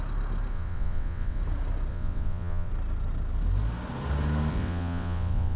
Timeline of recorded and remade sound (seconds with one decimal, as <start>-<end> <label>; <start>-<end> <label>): 0.0-0.5 recorded; 0.5-1.4 remade; 1.4-1.9 recorded; 1.9-2.7 remade; 2.7-4.5 recorded; 4.5-5.6 remade